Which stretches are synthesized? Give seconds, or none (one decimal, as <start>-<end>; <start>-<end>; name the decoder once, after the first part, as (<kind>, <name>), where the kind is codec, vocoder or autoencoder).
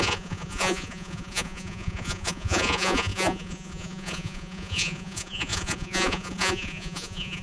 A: 0.0-7.4 (vocoder, Vocos)